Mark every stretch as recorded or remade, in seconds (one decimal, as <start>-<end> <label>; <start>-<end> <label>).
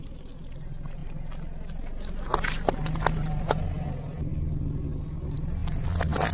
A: 0.0-6.3 recorded